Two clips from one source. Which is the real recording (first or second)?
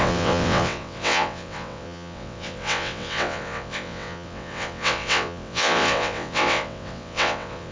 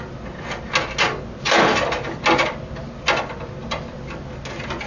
second